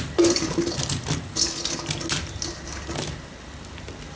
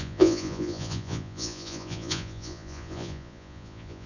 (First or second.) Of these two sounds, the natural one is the first